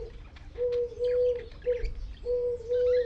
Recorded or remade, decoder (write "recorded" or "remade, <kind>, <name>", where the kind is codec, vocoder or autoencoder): recorded